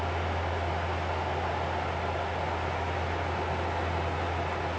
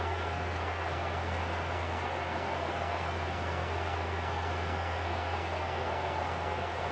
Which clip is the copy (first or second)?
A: second